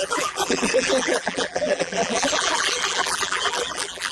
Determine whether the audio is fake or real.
fake